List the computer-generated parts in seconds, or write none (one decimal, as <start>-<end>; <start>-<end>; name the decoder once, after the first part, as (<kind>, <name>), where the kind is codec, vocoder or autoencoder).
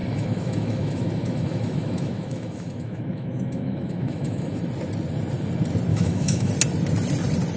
0.0-4.6 (autoencoder, DAC-VAE); 5.9-6.5